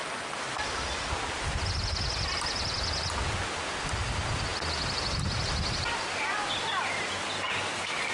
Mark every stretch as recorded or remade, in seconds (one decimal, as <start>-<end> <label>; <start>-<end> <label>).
0.0-8.1 recorded